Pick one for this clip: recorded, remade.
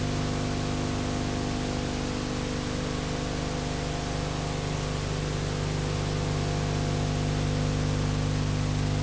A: recorded